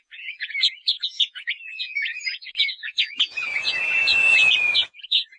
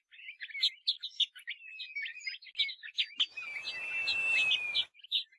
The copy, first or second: first